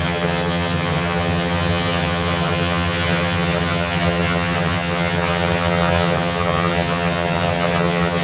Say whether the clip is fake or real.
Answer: fake